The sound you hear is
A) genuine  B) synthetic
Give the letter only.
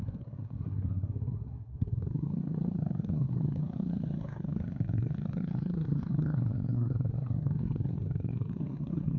B